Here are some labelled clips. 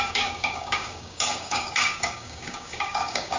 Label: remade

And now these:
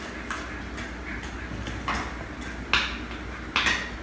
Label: recorded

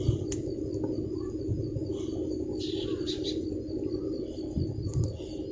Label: recorded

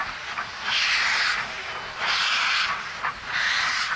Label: recorded